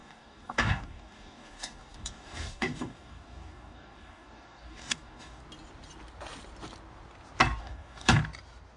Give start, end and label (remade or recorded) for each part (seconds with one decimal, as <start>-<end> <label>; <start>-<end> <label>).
0.0-5.4 remade; 5.4-7.6 recorded; 7.6-8.2 remade; 8.2-8.8 recorded